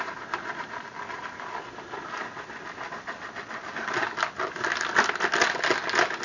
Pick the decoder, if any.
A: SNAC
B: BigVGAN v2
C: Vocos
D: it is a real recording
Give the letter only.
D